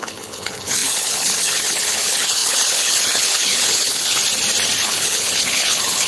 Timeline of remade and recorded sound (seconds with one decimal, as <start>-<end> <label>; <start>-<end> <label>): 0.0-4.2 remade; 4.2-4.8 recorded; 4.8-6.1 remade